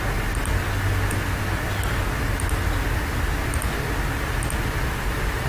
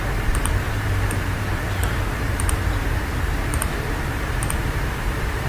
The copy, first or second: second